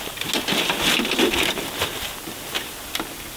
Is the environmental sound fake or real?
real